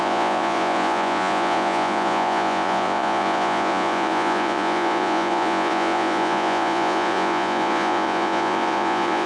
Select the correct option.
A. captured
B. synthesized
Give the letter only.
B